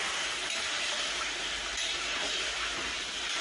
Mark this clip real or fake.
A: fake